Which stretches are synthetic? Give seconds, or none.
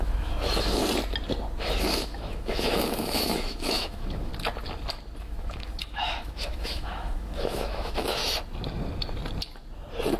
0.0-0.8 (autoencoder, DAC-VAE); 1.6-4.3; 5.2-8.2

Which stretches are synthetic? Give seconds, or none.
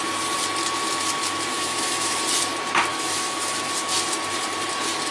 1.5-2.2 (autoencoder, DAC-VAE); 2.9-3.7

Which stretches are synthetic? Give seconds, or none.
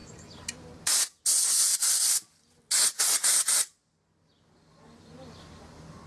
none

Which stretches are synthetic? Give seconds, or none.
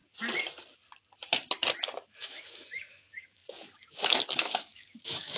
1.8-5.4 (autoencoder, DAC-VAE)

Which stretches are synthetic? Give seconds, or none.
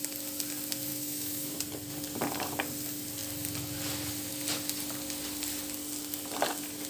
0.9-1.6 (autoencoder, DAC-VAE)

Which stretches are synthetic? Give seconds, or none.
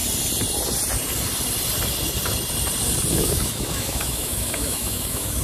3.1-5.4 (autoencoder, DAC-VAE)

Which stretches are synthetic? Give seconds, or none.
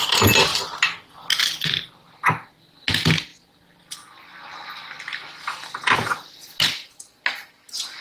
none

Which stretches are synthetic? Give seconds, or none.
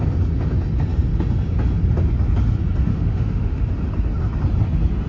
2.9-3.7 (autoencoder, DAC-VAE)